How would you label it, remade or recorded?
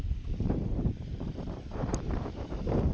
remade